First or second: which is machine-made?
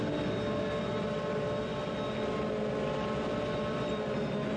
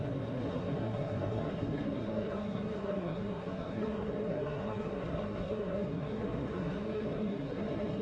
second